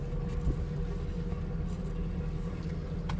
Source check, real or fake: real